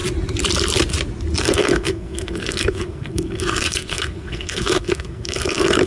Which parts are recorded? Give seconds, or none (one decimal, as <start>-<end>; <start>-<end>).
0.0-1.4